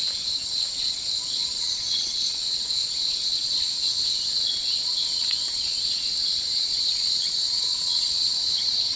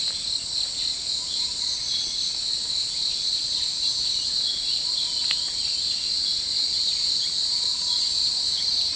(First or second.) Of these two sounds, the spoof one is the first